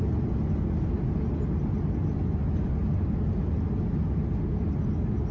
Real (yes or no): yes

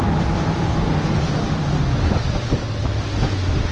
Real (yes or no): yes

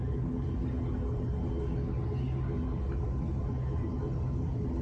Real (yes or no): yes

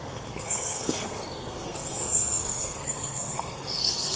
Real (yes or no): no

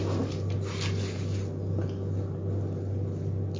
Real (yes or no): yes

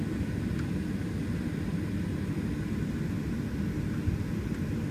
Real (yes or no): yes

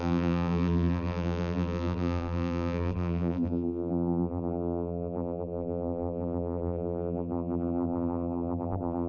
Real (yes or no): no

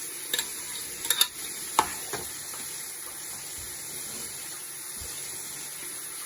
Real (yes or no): yes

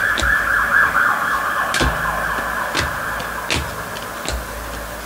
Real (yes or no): yes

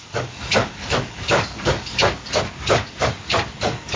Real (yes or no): no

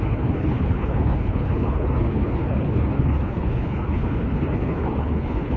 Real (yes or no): no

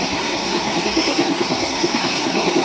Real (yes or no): no